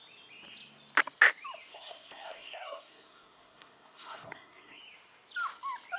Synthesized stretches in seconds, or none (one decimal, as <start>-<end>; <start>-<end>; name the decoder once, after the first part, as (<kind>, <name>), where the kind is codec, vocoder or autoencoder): 1.7-4.8 (codec, SNAC)